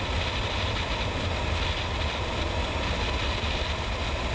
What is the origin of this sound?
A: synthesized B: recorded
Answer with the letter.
B